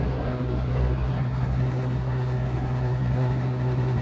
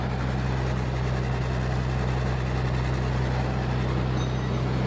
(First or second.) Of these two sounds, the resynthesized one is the first